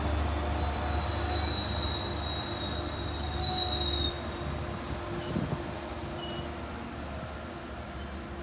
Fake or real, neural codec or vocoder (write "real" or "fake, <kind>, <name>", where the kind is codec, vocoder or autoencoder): real